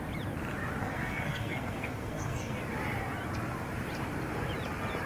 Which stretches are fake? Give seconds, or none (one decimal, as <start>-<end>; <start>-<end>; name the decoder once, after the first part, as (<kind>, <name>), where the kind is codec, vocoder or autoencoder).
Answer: 0.8-2.6 (codec, SNAC)